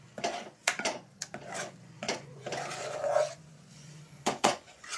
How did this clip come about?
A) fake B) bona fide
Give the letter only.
A